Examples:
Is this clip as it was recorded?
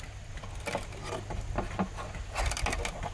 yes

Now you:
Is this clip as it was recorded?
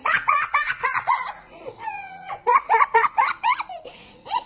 no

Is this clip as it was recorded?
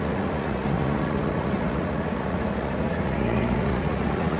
no